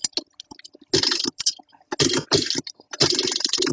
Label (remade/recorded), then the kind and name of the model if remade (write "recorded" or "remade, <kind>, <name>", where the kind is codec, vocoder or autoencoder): recorded